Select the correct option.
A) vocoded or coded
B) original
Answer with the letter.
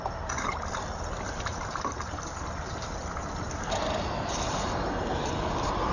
B